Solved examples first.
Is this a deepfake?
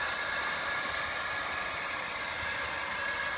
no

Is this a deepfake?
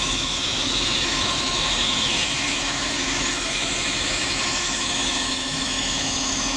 yes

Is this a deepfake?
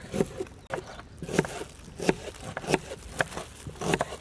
no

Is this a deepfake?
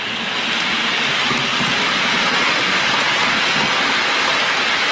no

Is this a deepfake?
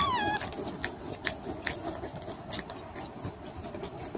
no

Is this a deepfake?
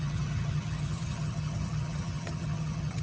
yes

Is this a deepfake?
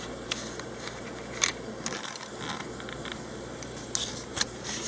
no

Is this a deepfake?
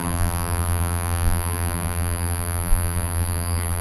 yes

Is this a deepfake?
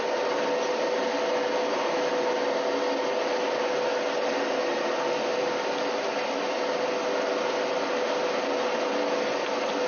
no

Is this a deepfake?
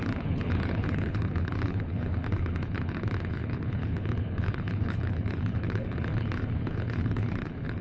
yes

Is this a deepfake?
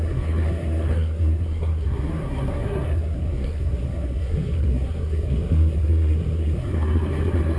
yes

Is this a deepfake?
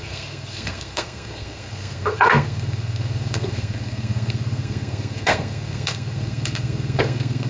yes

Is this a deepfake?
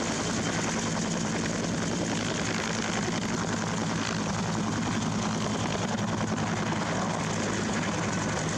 no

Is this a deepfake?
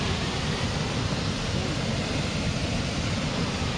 no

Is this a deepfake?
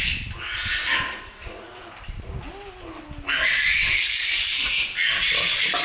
no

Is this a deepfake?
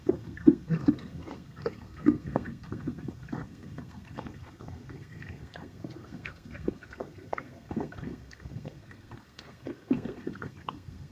yes